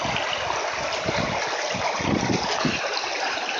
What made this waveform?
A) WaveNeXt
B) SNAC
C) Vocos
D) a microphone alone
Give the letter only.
D